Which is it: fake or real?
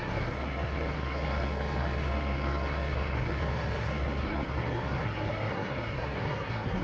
fake